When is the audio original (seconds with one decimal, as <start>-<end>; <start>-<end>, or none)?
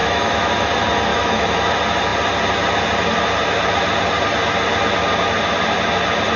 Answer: 0.7-1.1; 1.7-6.4